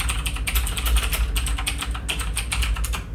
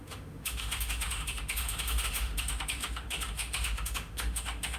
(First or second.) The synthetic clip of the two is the second